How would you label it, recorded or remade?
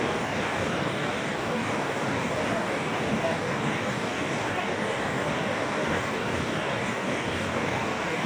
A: remade